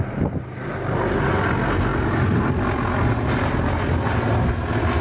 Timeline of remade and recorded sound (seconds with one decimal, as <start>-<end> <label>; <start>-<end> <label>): 0.0-5.0 recorded